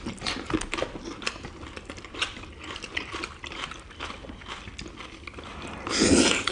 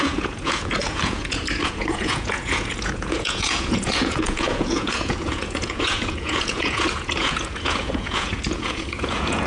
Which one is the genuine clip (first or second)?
first